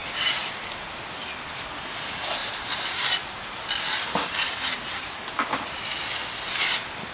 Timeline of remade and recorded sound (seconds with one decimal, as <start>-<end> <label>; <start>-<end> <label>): 0.0-7.1 recorded